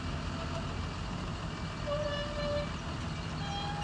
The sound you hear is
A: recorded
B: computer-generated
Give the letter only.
A